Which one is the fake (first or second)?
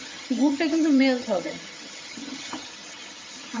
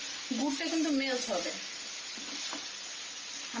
first